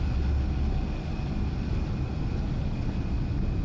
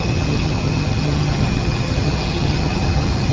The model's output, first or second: second